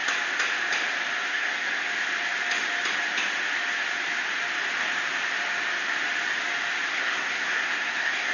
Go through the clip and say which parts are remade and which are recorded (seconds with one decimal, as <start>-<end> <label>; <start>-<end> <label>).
0.0-1.3 recorded; 1.3-1.9 remade; 1.9-6.9 recorded; 6.9-8.3 remade